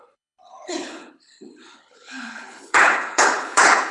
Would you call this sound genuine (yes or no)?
no